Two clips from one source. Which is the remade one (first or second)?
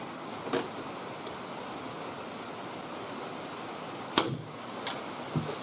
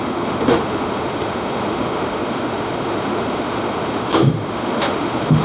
second